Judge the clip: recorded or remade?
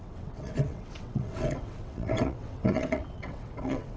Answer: remade